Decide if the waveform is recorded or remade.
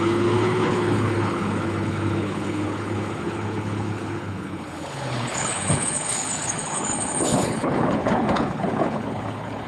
remade